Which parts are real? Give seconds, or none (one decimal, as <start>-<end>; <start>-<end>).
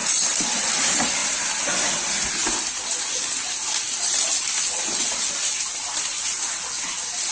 2.4-6.8